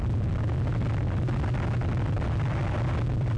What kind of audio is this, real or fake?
real